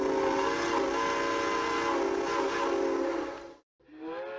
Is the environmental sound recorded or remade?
recorded